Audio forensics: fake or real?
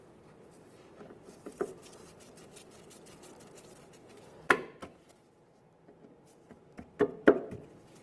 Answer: real